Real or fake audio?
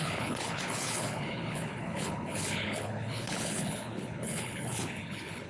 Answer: fake